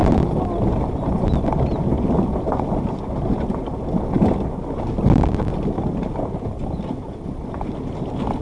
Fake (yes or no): no